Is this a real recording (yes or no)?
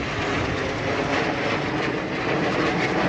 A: yes